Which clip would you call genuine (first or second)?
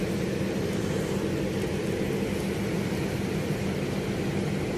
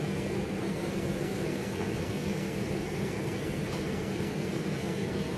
first